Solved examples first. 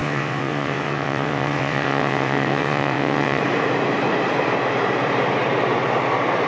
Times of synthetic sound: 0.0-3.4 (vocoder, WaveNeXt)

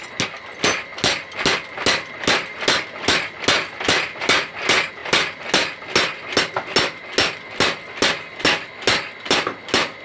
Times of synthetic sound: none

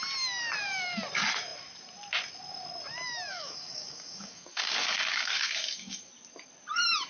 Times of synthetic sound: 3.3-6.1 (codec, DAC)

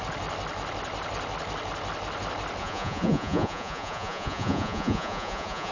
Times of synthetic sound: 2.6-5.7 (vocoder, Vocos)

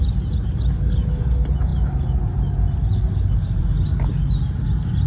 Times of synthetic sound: 3.6-5.1 (vocoder, BigVGAN v2)

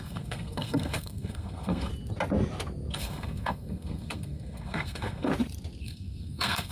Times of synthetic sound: 0.0-1.9 (codec, SNAC); 2.9-5.3; 5.8-6.7

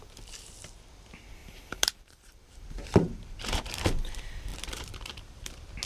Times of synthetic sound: 1.4-4.1 (vocoder, BigVGAN v2); 4.5-5.5